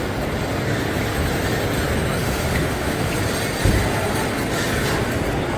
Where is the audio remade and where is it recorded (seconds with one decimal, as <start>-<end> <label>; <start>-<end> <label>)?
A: 0.0-2.2 recorded; 2.2-3.1 remade; 3.1-5.6 recorded